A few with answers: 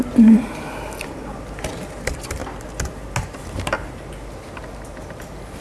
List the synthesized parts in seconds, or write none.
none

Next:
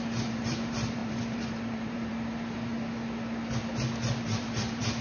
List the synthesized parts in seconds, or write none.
0.0-2.7 (vocoder, BigVGAN v2); 4.2-5.0